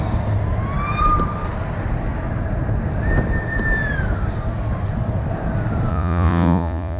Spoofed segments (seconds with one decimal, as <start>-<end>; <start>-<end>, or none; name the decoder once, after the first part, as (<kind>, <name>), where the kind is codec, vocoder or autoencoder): 5.9-7.0 (vocoder, Vocos)